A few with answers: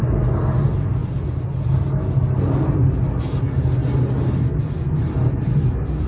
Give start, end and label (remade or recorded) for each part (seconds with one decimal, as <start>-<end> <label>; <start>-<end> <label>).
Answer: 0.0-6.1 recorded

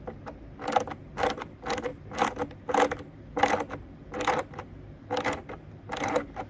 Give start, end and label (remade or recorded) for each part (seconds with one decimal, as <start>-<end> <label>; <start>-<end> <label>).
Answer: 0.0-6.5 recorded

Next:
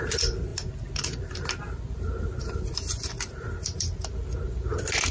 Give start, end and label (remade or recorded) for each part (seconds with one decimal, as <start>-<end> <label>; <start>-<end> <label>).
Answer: 0.0-5.1 recorded